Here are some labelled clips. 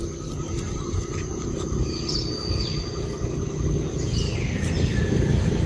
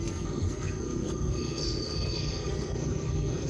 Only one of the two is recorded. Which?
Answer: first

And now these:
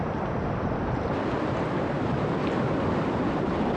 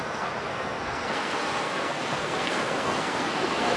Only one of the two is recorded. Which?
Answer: first